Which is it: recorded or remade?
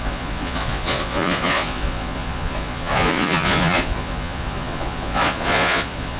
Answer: remade